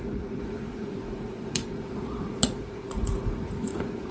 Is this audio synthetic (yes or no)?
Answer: yes